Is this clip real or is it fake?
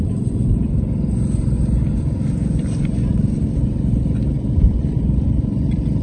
fake